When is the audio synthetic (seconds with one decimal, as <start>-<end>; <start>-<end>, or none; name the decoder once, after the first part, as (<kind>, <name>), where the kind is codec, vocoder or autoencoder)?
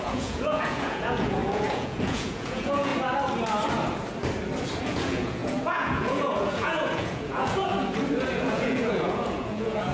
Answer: 0.0-2.9 (vocoder, Vocos); 4.8-7.7; 8.3-9.9